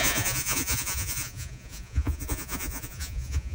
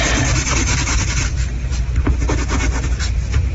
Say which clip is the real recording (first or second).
second